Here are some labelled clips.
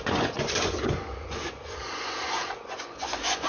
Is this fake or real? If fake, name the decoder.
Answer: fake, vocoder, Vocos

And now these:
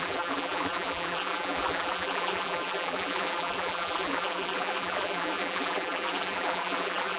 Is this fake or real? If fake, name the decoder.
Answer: fake, vocoder, BigVGAN v2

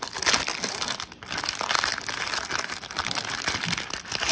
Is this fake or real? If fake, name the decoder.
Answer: real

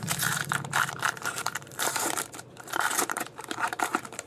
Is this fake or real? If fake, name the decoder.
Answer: fake, vocoder, BigVGAN v2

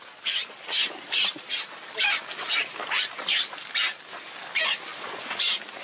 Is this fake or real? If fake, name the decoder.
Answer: real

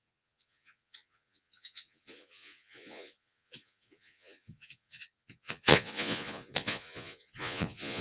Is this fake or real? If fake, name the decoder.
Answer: fake, vocoder, Vocos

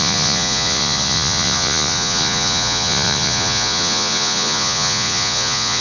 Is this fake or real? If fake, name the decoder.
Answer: fake, vocoder, Vocos